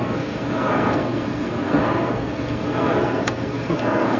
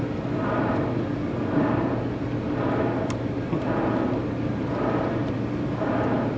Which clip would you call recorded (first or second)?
second